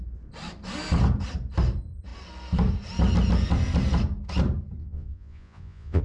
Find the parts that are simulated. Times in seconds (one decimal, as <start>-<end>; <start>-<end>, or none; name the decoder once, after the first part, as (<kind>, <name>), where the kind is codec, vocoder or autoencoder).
4.8-6.0 (vocoder, Vocos)